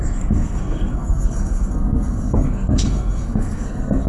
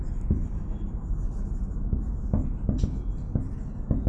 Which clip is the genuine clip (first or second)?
second